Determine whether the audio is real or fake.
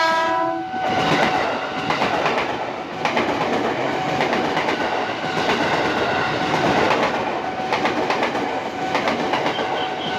real